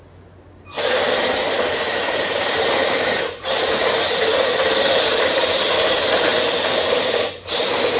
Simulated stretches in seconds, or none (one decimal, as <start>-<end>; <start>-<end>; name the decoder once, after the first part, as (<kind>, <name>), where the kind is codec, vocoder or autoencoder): none